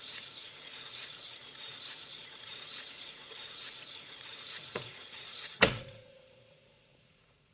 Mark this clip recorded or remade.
remade